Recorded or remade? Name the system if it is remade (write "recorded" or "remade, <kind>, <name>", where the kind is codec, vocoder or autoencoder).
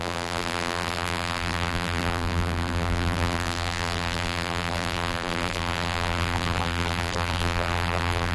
remade, vocoder, BigVGAN v2